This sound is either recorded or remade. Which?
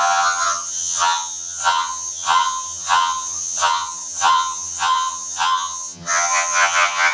remade